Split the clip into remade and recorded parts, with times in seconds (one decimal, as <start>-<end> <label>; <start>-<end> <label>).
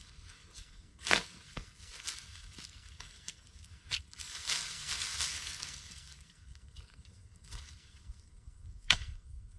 0.0-9.6 remade